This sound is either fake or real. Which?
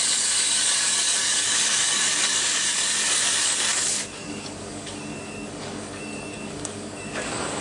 fake